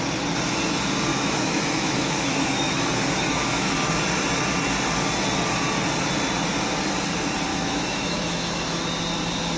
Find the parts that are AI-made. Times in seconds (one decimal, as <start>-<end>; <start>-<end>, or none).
1.1-3.7; 7.5-8.8